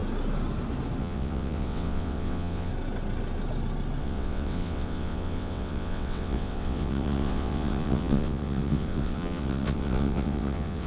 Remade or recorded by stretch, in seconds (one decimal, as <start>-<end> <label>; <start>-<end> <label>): 0.0-1.0 recorded; 1.0-2.7 remade; 2.7-4.0 recorded; 4.0-10.9 remade